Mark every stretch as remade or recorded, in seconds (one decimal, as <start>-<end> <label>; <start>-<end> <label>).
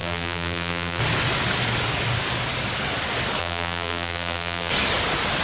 0.0-1.0 remade; 1.0-3.4 recorded; 3.4-4.7 remade; 4.7-5.4 recorded